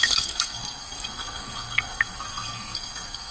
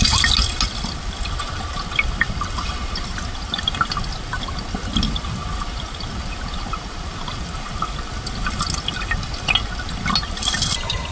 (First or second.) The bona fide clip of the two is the second